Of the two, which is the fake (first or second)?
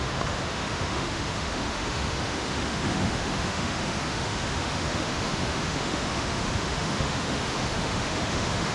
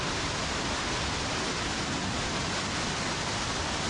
first